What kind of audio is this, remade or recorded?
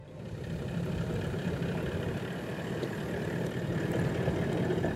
remade